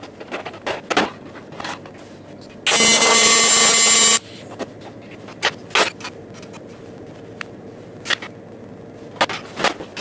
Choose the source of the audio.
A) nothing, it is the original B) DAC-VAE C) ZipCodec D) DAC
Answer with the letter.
A